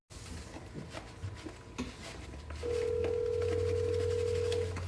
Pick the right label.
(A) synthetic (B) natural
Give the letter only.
B